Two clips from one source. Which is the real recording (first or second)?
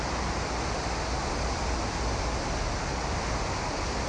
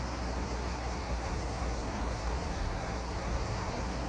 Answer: first